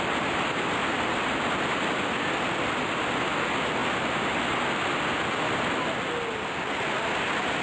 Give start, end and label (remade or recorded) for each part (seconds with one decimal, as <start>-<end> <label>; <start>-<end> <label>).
0.0-7.6 recorded